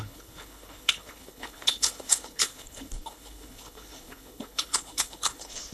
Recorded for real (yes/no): no